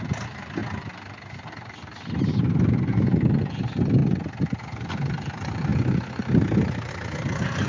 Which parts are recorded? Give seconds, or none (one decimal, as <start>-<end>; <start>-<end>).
0.0-7.7